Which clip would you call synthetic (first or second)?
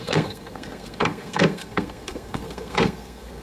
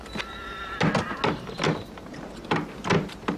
first